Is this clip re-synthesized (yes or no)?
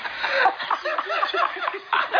yes